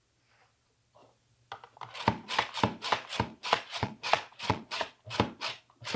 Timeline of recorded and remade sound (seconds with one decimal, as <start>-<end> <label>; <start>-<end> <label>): 0.0-3.3 recorded; 3.3-5.0 remade; 5.0-6.0 recorded